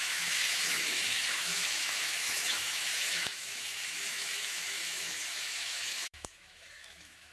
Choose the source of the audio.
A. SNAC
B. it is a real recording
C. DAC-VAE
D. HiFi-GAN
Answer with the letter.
C